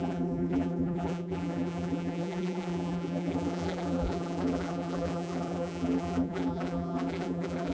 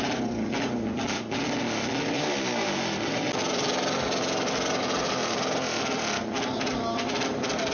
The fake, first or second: first